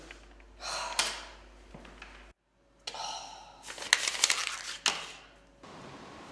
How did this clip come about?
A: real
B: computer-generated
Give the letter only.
A